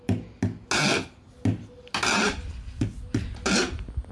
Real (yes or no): yes